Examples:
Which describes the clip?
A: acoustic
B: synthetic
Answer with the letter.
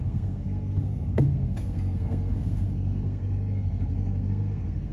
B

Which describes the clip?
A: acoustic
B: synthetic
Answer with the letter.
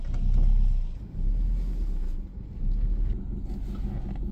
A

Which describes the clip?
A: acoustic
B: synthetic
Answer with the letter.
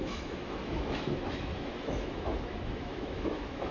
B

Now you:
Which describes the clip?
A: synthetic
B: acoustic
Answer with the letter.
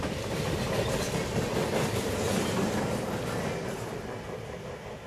B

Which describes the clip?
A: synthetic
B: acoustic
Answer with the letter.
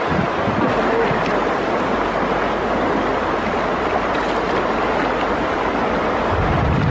B